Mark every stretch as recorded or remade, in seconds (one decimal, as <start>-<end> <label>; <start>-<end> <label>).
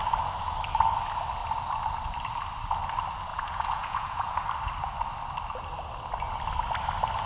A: 0.0-3.3 recorded; 3.3-4.4 remade; 4.4-7.3 recorded